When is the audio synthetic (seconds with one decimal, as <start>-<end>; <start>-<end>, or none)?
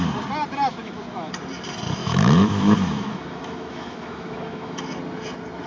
0.7-1.3; 2.0-4.8